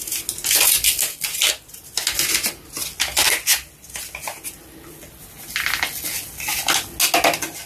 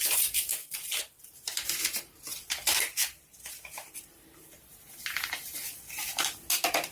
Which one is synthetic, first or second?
second